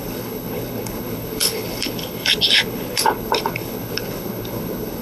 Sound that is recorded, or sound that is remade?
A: remade